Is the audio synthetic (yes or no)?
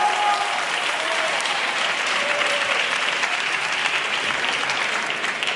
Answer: yes